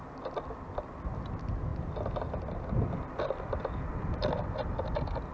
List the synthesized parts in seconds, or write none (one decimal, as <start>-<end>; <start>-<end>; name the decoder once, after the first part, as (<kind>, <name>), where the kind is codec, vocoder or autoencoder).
none